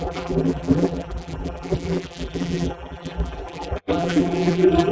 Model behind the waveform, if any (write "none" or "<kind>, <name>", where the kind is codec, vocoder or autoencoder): vocoder, BigVGAN v2